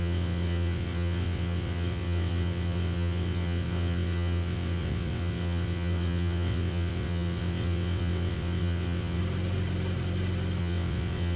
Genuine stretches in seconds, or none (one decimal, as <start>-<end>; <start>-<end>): 9.2-10.6